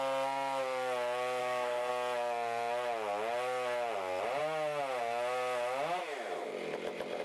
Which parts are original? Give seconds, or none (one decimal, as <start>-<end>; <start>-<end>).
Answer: 0.0-1.4; 1.9-7.2